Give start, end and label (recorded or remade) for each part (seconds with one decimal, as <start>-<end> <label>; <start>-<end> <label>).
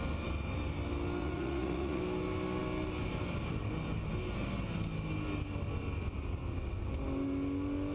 0.0-1.2 recorded; 1.2-2.0 remade; 2.0-7.9 recorded